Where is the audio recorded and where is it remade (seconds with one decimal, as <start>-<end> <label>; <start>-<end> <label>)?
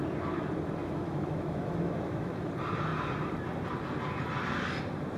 0.0-0.8 recorded; 0.8-2.5 remade; 2.5-5.2 recorded